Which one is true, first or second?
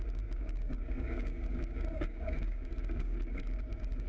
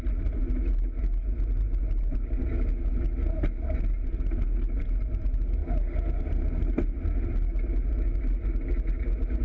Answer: second